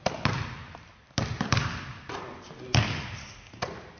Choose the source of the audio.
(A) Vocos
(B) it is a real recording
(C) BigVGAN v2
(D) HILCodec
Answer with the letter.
B